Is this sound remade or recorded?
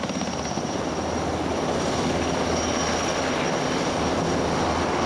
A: recorded